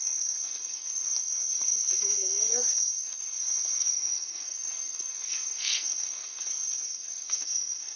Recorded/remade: remade